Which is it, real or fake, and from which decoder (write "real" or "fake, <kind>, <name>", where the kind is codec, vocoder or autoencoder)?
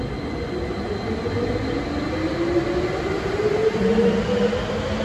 real